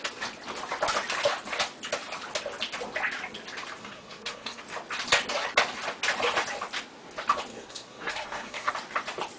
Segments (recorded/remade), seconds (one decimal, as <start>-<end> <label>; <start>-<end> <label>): 0.0-3.8 recorded; 3.8-4.6 remade; 4.6-7.5 recorded; 7.5-8.7 remade; 8.7-9.4 recorded